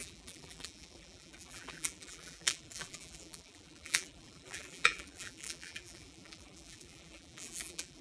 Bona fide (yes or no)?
no